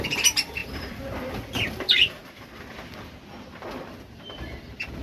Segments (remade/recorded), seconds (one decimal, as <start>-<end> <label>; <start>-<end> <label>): 0.0-2.2 remade; 2.2-3.9 recorded; 3.9-5.0 remade

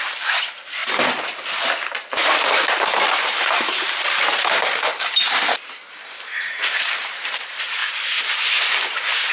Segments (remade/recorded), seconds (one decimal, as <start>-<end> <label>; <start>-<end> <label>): 0.0-0.8 remade; 0.8-3.0 recorded; 3.0-7.8 remade; 7.8-9.3 recorded